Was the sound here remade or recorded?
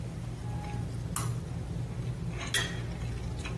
recorded